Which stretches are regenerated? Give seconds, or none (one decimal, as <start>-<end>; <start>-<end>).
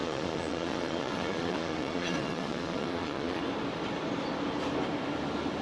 0.0-3.4